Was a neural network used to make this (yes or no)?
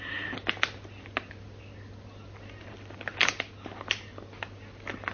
no